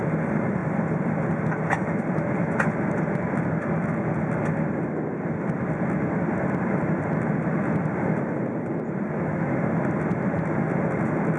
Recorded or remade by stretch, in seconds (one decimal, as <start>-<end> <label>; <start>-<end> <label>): 0.0-11.4 recorded